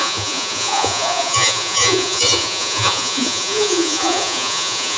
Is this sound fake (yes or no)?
yes